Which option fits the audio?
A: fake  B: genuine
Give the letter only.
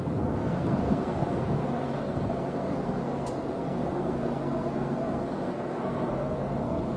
A